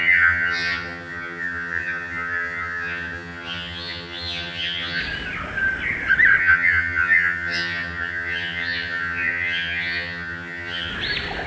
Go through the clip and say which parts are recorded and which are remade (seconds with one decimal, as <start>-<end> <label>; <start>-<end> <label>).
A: 0.0-5.0 remade; 5.0-6.4 recorded; 6.4-10.9 remade; 10.9-11.5 recorded